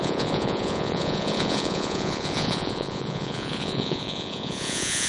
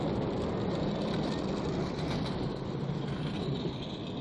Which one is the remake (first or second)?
first